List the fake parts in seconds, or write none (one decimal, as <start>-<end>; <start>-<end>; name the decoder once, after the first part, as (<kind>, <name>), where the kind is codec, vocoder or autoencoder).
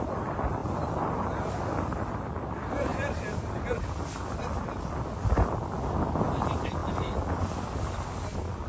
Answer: none